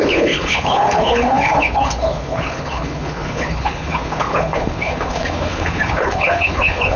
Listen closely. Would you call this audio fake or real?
fake